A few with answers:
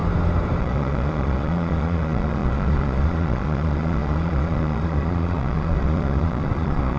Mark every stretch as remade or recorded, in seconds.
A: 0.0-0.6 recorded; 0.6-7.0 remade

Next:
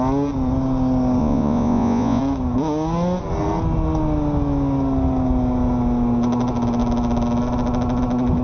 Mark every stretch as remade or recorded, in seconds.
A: 0.0-1.2 recorded; 1.2-2.2 remade; 2.2-8.4 recorded

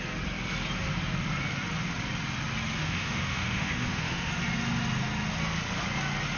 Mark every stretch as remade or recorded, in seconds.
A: 0.0-2.8 recorded; 2.8-4.3 remade; 4.3-6.4 recorded